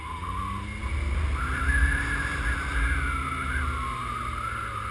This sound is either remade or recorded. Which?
recorded